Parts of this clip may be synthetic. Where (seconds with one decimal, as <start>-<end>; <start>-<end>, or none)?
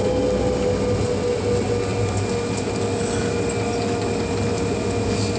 none